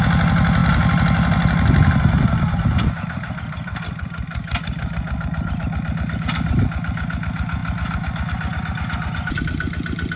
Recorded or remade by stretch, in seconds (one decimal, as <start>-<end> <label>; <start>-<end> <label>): 0.0-10.2 recorded